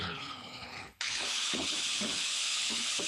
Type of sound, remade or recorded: remade